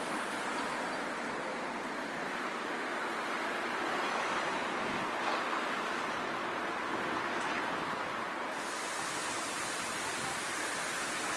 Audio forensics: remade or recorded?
recorded